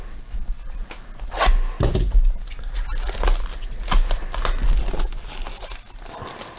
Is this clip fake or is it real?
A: real